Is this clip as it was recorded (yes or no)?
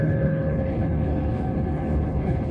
no